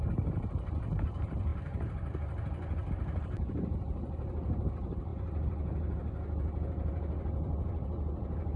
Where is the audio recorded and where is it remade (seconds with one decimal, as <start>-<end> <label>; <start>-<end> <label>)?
0.0-5.1 remade; 5.1-8.6 recorded